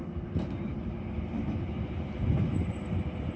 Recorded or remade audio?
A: recorded